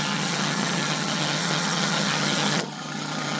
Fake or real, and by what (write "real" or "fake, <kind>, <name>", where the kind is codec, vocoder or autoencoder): fake, vocoder, HiFi-GAN